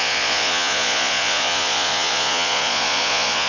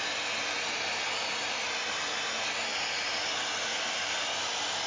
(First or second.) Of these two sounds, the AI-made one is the first